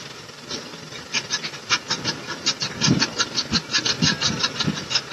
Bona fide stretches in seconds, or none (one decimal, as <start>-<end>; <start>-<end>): 0.0-5.1